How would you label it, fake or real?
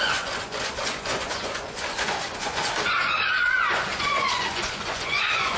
fake